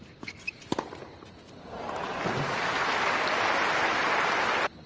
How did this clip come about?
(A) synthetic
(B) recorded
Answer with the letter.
B